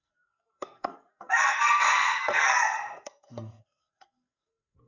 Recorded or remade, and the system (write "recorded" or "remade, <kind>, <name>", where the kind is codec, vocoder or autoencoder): remade, codec, SNAC